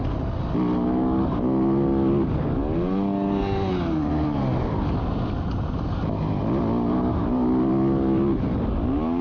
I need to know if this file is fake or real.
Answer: real